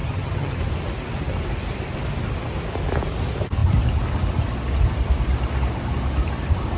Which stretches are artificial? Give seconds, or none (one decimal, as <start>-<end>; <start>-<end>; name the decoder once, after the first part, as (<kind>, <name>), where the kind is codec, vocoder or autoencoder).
0.0-0.6 (vocoder, HiFi-GAN)